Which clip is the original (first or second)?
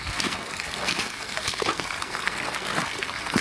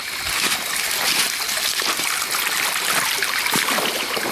second